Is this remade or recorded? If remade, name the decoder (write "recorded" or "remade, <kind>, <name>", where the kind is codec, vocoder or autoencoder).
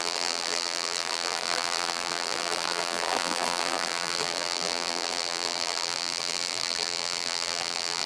remade, vocoder, BigVGAN v2